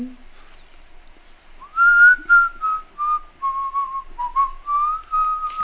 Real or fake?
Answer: real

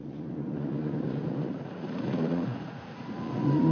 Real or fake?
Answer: fake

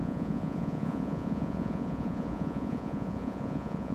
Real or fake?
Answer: fake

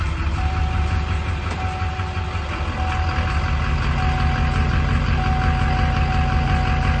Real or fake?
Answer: real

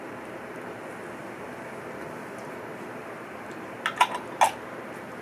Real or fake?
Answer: real